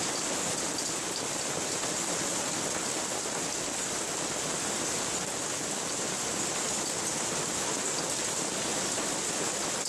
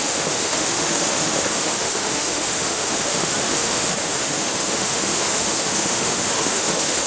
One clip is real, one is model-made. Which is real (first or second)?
first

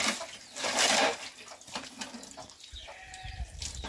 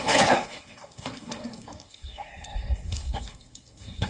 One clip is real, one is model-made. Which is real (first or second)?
first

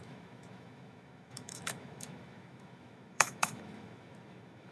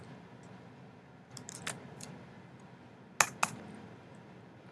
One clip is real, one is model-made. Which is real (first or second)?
second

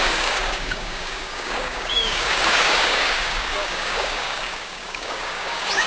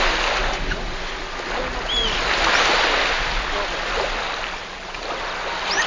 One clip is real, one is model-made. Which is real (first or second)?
second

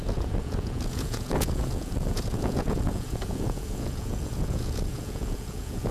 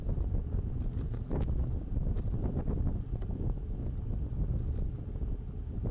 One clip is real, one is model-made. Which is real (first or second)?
second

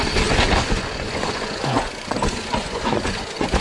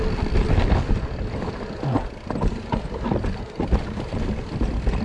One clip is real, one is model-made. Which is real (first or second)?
second